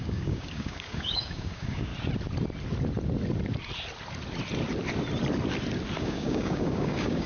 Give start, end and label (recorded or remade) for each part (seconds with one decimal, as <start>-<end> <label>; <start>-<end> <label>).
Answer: 0.0-1.9 remade; 1.9-6.0 recorded; 6.0-7.3 remade

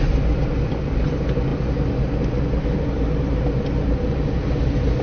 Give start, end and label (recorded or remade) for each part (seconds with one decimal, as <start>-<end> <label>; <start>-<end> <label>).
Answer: 0.0-5.0 recorded

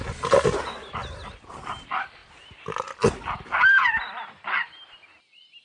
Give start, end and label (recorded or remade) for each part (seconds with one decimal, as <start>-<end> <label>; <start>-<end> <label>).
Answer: 0.0-5.6 recorded

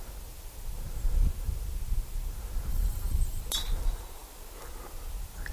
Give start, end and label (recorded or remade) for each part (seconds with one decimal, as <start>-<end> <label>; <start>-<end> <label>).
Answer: 0.0-2.7 recorded; 2.7-3.4 remade; 3.4-5.5 recorded

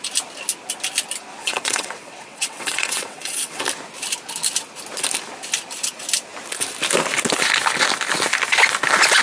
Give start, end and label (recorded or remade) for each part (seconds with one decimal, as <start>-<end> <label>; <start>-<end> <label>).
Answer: 0.0-1.4 recorded; 1.4-3.6 remade; 3.6-9.2 recorded